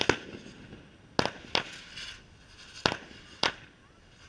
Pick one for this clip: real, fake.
real